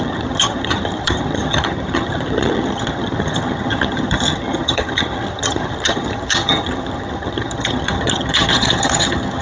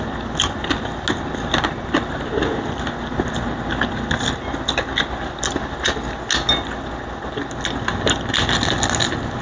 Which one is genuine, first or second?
second